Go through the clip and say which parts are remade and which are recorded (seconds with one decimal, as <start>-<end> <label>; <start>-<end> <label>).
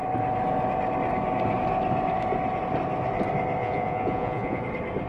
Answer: 0.0-3.6 recorded; 3.6-4.6 remade; 4.6-5.1 recorded